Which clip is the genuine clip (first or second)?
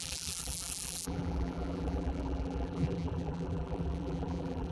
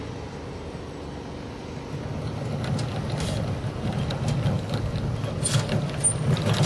second